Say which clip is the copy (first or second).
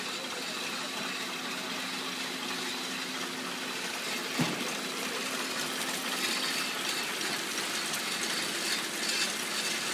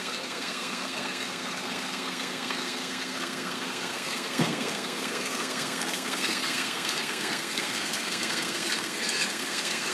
second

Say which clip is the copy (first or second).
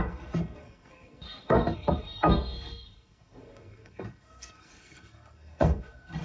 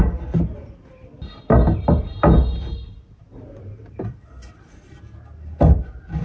first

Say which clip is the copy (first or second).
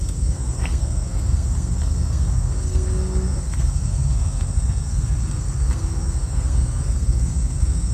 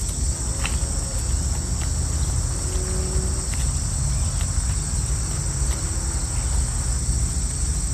first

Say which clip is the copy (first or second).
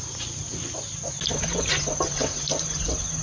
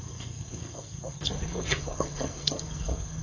second